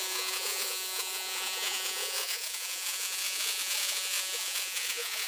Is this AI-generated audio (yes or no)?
yes